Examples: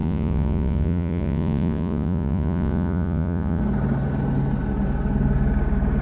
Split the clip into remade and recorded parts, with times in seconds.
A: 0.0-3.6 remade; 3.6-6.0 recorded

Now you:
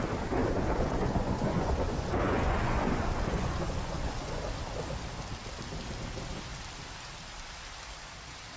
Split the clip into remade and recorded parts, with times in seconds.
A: 0.0-0.4 recorded; 0.4-4.4 remade; 4.4-8.6 recorded

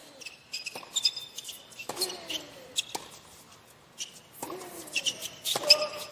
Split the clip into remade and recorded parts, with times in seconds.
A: 0.0-6.1 recorded

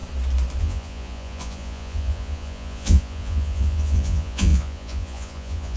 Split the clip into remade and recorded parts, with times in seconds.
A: 0.0-0.6 recorded; 0.6-5.8 remade